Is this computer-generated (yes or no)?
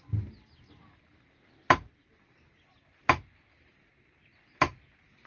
no